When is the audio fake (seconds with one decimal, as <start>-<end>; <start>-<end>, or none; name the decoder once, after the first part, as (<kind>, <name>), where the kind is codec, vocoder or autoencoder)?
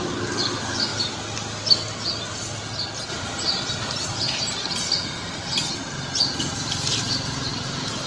7.5-8.1 (vocoder, BigVGAN v2)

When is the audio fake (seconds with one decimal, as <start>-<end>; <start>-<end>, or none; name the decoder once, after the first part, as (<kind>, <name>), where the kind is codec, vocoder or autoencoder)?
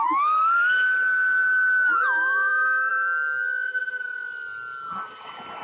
none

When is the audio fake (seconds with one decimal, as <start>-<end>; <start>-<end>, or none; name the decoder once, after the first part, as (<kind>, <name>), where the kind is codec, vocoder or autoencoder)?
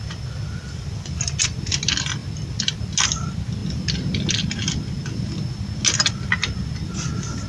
none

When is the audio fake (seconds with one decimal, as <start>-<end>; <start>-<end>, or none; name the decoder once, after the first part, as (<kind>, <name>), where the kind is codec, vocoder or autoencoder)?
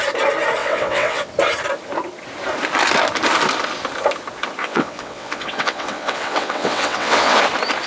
0.6-1.3 (vocoder, WaveNeXt); 4.6-7.4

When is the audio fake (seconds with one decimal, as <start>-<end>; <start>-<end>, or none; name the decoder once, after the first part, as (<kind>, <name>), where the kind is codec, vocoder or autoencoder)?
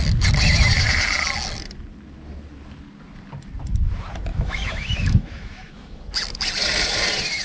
4.3-6.0 (autoencoder, DAC-VAE)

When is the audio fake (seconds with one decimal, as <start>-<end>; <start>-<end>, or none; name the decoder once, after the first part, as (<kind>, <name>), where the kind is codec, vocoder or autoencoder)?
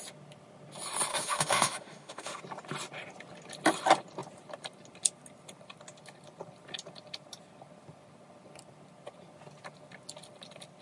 1.1-2.4 (autoencoder, DAC-VAE)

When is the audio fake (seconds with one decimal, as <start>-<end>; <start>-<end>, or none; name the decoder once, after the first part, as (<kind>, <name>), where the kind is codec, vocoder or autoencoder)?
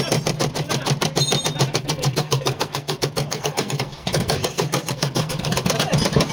1.7-5.5 (codec, SNAC)